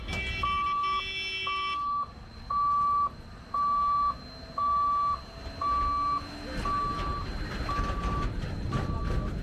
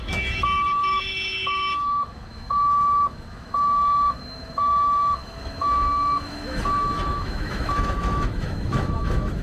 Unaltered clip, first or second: first